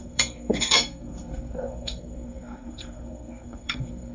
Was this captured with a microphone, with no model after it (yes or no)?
no